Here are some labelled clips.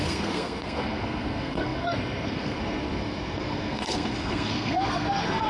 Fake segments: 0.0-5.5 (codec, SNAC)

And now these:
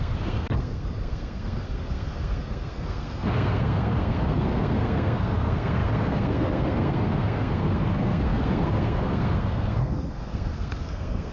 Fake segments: 0.0-11.3 (codec, SNAC)

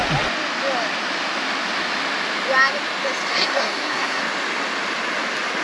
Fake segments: 3.3-4.2 (codec, SNAC)

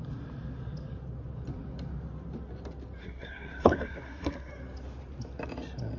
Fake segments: 3.0-4.5 (codec, SNAC)

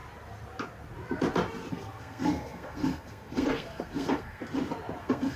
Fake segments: 1.7-4.4 (codec, SNAC); 5.0-5.4

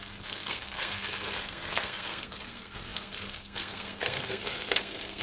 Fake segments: 0.0-5.2 (codec, SNAC)